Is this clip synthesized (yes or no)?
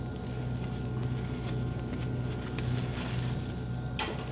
no